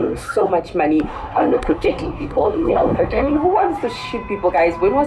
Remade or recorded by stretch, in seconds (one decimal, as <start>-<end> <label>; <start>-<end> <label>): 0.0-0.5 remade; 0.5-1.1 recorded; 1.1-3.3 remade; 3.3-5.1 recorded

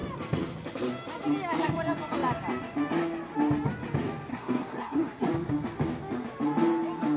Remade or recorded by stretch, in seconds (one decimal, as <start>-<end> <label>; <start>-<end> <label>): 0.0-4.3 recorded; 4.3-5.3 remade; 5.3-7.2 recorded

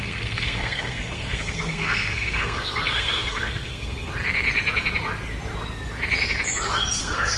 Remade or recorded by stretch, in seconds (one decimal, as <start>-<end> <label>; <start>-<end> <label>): 0.0-4.1 remade; 4.1-7.0 recorded; 7.0-7.4 remade

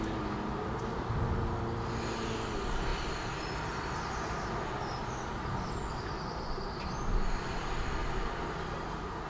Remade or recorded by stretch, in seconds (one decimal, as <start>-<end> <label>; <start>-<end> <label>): 0.0-9.3 recorded

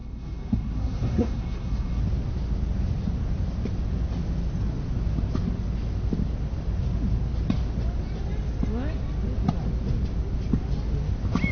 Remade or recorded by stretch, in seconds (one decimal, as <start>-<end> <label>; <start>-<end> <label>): 0.0-2.0 remade; 2.0-11.5 recorded

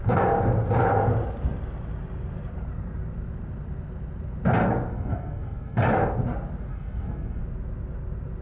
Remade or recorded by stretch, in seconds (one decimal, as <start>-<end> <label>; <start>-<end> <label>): 0.0-4.9 recorded; 4.9-5.8 remade; 5.8-6.7 recorded; 6.7-7.4 remade; 7.4-8.4 recorded